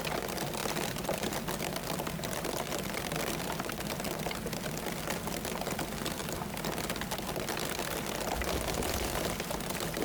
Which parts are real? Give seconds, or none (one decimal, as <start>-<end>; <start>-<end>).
0.0-10.0